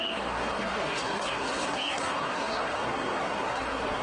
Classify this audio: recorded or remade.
remade